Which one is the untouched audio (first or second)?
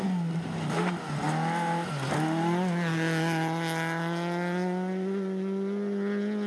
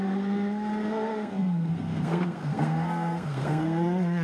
first